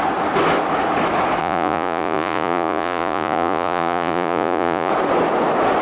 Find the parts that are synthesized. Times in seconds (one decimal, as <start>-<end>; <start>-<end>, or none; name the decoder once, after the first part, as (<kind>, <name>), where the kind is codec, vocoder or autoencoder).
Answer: 1.4-4.9 (vocoder, Vocos)